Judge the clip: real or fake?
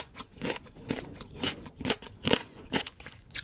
fake